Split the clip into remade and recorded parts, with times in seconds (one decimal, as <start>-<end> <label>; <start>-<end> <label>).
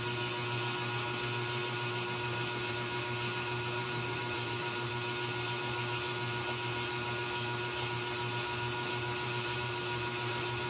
0.0-3.8 recorded; 3.8-4.9 remade; 4.9-8.9 recorded; 8.9-9.8 remade; 9.8-10.7 recorded